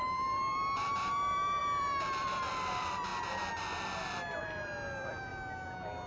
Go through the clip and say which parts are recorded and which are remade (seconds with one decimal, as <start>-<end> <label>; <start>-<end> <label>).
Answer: 0.0-3.1 remade; 3.1-4.4 recorded; 4.4-5.3 remade; 5.3-6.1 recorded